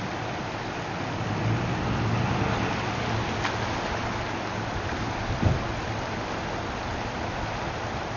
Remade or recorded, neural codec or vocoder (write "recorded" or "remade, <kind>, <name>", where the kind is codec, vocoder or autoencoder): recorded